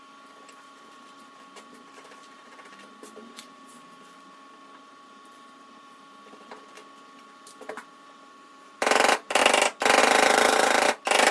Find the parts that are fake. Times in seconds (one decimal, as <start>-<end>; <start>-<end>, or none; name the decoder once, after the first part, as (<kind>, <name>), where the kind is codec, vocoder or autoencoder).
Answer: 0.0-6.8 (vocoder, BigVGAN v2); 7.7-9.4; 10.0-11.3